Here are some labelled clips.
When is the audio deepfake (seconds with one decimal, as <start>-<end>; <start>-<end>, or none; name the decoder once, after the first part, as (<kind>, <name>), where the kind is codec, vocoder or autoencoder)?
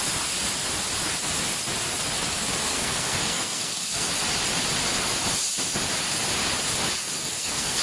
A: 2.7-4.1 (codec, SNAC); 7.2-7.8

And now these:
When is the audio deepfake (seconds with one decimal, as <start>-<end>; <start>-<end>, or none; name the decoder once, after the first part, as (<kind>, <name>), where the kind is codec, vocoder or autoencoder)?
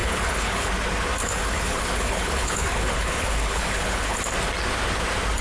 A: 0.0-0.7 (codec, HILCodec); 1.2-4.2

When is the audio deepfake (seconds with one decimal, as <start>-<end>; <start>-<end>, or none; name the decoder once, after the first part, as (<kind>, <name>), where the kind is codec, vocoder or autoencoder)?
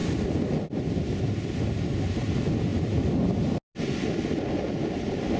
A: none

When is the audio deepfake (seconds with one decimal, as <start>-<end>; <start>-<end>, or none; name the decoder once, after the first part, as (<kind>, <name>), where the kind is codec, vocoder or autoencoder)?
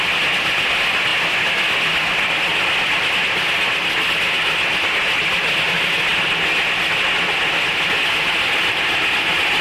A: none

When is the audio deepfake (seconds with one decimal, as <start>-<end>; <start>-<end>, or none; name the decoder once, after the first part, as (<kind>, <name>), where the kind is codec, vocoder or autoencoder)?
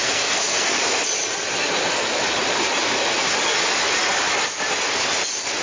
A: 0.0-0.8 (codec, SNAC)